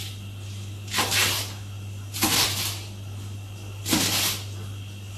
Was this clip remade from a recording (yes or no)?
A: no